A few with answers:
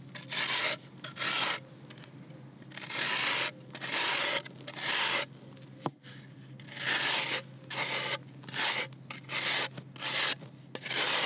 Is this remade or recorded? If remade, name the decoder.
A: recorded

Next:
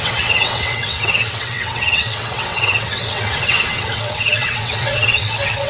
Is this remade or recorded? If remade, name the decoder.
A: remade, vocoder, WaveNeXt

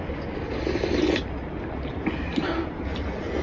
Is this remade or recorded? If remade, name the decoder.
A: recorded